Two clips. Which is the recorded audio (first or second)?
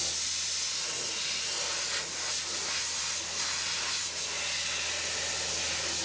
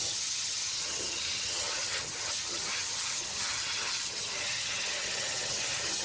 first